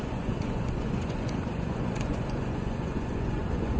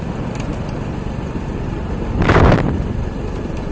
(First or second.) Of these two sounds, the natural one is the second